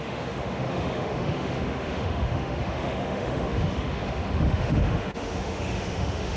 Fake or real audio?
fake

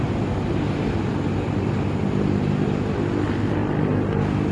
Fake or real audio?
real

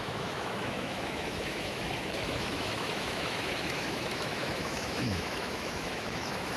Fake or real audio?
fake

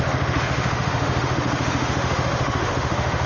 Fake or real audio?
fake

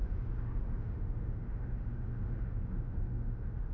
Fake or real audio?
fake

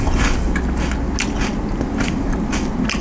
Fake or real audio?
real